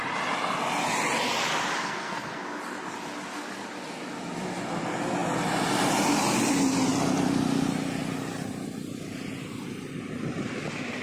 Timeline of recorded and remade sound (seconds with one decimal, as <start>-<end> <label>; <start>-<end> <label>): 0.0-1.8 recorded; 1.8-2.4 remade; 2.4-11.0 recorded